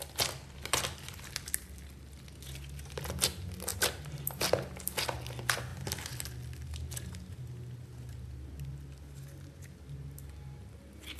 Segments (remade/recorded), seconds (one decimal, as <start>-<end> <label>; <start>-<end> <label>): 0.0-11.2 recorded